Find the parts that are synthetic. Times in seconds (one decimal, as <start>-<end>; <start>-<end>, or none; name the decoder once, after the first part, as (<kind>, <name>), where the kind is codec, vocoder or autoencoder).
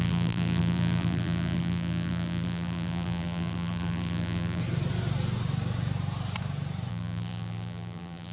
0.0-4.6 (vocoder, BigVGAN v2); 6.9-8.3